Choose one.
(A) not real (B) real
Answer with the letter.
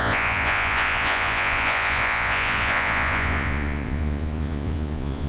A